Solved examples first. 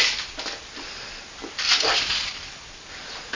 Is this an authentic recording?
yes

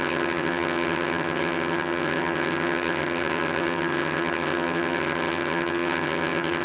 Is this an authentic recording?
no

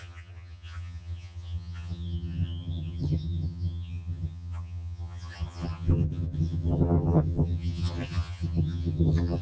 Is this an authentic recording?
no